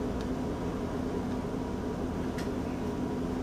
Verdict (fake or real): real